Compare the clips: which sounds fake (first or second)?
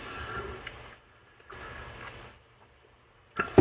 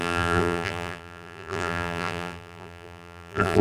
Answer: second